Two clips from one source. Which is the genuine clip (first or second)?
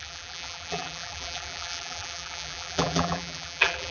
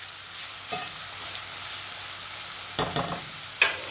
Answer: second